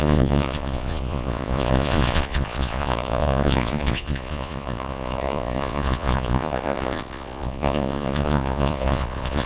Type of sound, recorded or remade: remade